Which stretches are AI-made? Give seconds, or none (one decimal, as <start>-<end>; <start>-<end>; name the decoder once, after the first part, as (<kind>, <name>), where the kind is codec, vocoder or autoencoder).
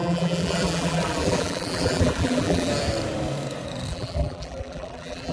0.0-2.7 (vocoder, BigVGAN v2); 3.9-5.3